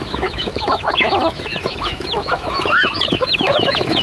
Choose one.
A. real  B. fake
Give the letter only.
B